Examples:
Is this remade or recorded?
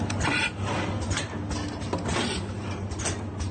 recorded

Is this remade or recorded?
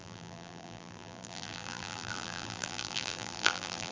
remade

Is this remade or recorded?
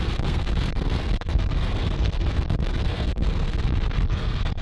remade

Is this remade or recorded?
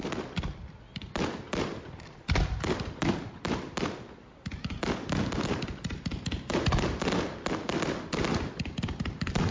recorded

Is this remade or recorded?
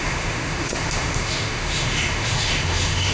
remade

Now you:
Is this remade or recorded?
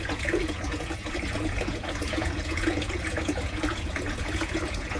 remade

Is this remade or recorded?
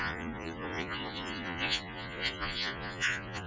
remade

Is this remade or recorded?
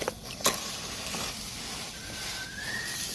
recorded